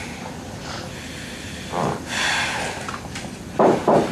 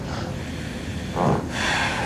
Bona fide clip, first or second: second